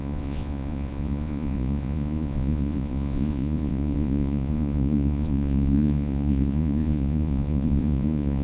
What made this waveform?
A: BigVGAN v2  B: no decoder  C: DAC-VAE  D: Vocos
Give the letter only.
D